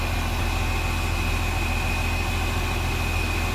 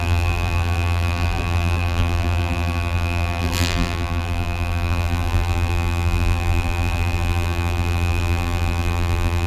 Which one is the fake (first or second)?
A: second